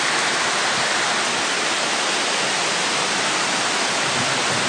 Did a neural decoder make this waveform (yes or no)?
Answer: no